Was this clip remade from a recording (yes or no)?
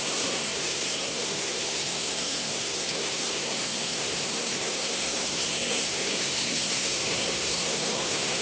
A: yes